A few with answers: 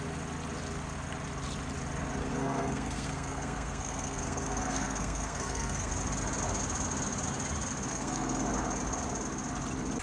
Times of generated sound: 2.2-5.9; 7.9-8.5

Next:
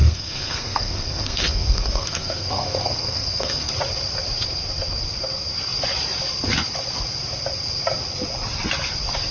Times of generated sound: 0.0-3.7

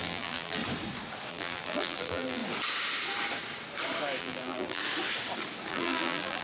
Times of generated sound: 0.0-0.6; 1.3-2.4; 4.2-4.8; 5.7-6.4